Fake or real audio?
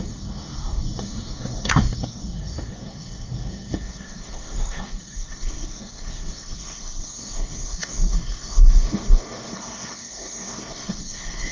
fake